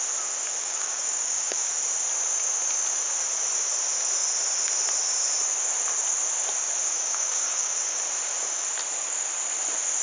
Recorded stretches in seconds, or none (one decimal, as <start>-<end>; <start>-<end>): 0.0-0.6; 1.7-6.8; 8.0-10.0